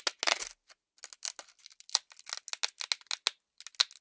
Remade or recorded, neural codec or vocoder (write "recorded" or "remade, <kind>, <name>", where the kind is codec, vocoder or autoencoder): recorded